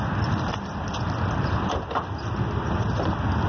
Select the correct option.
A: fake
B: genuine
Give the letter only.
B